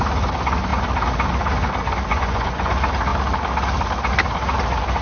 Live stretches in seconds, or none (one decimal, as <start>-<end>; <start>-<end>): 0.0-2.1; 2.7-5.0